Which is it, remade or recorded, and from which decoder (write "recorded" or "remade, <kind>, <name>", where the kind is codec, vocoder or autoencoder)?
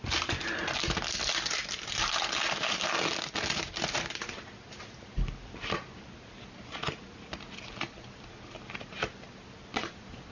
recorded